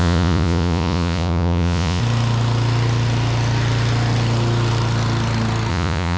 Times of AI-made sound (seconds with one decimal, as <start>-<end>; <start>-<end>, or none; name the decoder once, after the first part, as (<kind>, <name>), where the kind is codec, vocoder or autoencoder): 0.0-2.0 (vocoder, Vocos); 5.7-6.2